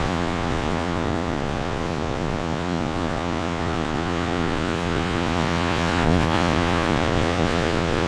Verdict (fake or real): fake